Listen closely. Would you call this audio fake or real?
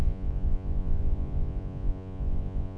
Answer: fake